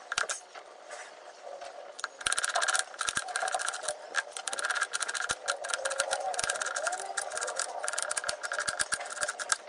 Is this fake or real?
real